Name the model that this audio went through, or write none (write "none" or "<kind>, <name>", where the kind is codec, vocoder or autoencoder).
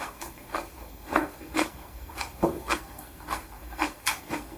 codec, SNAC